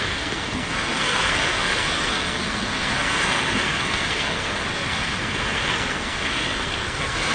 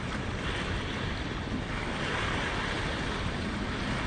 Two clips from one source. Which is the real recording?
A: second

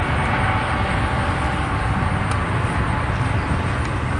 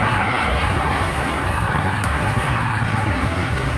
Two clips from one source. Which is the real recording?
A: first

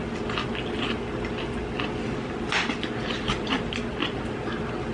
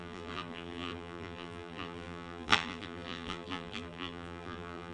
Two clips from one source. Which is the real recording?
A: first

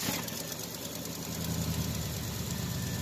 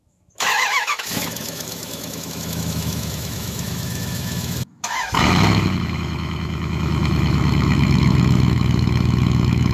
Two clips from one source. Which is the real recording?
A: first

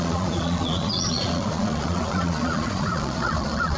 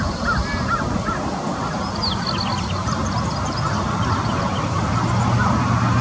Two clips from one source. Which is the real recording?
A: second